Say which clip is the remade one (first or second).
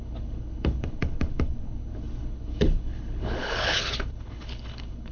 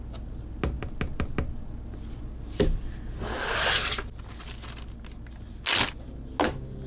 first